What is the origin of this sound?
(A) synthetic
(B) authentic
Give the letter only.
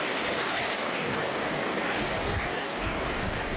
A